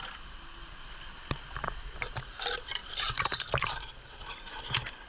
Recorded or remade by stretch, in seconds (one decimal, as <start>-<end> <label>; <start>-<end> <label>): 0.0-2.8 recorded; 2.8-4.4 remade; 4.4-5.1 recorded